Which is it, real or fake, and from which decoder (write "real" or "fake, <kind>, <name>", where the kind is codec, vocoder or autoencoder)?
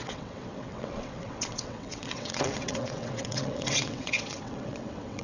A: fake, vocoder, WaveNeXt